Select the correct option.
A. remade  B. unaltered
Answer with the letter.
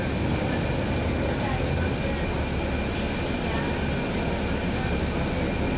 B